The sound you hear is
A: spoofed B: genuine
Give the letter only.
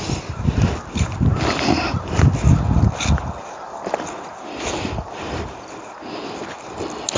B